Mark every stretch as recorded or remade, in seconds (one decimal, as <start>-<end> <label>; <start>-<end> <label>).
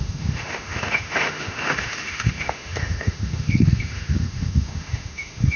0.0-5.6 remade